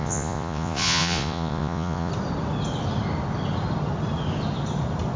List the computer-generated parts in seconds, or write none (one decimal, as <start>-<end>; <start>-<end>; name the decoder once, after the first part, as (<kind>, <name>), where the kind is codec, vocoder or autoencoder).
0.0-2.1 (vocoder, Vocos)